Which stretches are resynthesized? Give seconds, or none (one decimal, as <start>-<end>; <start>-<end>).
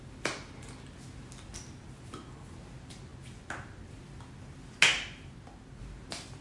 none